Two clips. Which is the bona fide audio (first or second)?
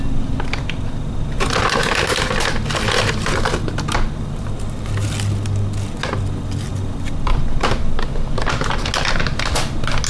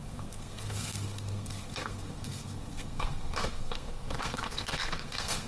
first